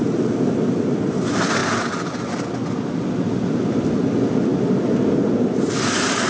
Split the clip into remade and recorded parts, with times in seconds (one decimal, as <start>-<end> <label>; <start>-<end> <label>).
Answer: 0.0-6.3 recorded